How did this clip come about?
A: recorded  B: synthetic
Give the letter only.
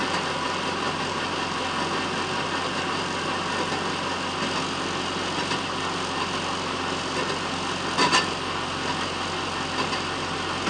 A